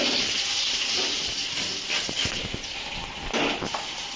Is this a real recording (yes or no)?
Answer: yes